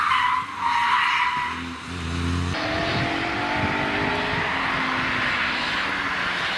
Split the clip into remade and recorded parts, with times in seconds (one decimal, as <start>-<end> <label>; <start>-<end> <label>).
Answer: 0.0-2.9 recorded; 2.9-4.1 remade; 4.1-6.6 recorded

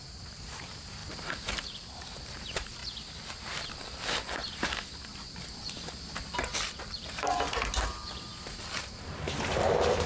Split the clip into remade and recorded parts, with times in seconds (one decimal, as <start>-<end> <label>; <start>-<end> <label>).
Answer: 0.0-2.8 remade; 2.8-3.4 recorded; 3.4-4.4 remade; 4.4-6.8 recorded; 6.8-8.3 remade; 8.3-8.8 recorded; 8.8-10.1 remade

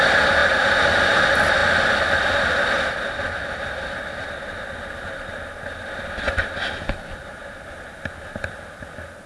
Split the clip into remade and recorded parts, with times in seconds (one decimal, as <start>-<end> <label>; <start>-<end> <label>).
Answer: 0.0-9.3 recorded

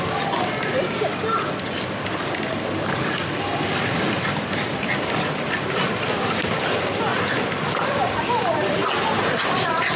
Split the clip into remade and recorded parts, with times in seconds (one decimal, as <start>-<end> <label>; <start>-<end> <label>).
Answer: 0.0-7.1 recorded; 7.1-8.2 remade; 8.2-10.0 recorded